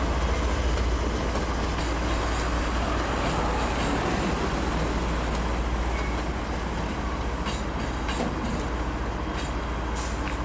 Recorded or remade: recorded